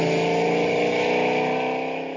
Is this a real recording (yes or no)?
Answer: yes